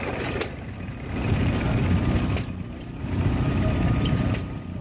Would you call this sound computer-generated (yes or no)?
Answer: yes